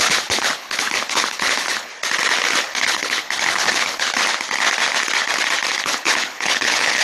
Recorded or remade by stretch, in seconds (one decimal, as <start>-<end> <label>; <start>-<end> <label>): 0.0-1.9 remade; 1.9-2.6 recorded; 2.6-4.1 remade; 4.1-5.8 recorded; 5.8-7.0 remade